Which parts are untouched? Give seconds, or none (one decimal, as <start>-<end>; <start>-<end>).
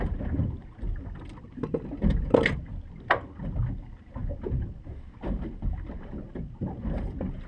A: 0.0-7.5